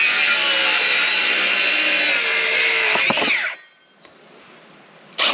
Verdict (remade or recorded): recorded